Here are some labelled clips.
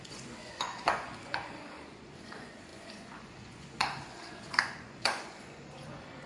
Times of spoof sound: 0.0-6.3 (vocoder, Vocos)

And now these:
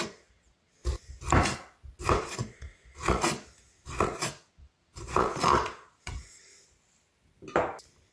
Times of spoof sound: 0.0-0.8 (vocoder, Vocos); 2.2-6.5